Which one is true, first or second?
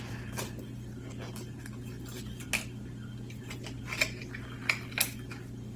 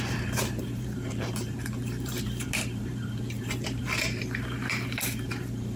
first